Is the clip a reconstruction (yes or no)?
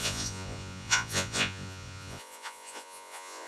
yes